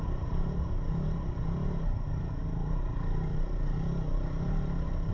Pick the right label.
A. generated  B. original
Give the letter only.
B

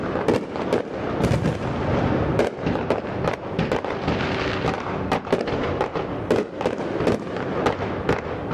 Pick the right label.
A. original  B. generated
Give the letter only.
A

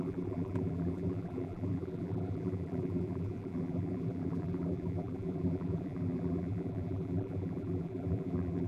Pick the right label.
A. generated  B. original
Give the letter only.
A